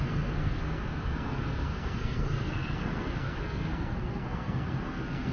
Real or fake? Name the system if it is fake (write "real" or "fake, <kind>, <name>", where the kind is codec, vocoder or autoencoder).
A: fake, codec, SNAC